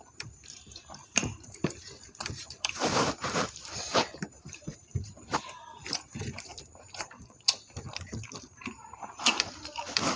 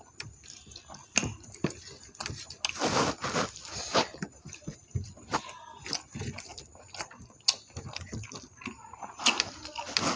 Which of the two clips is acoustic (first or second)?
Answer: second